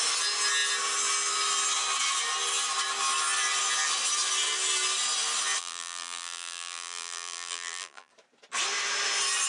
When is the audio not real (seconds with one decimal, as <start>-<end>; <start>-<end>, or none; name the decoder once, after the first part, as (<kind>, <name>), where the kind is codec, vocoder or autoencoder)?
5.6-8.1 (vocoder, BigVGAN v2)